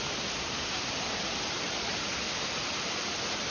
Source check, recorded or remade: recorded